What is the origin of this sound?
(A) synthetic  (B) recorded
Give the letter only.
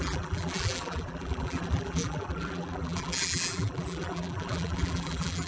A